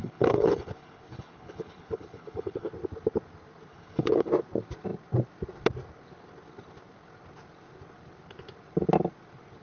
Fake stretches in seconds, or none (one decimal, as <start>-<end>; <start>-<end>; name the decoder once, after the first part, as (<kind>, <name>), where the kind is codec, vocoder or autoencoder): 0.0-2.7 (codec, HILCodec); 3.7-4.3